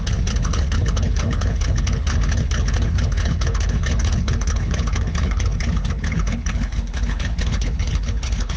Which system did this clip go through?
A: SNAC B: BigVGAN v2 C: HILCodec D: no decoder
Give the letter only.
C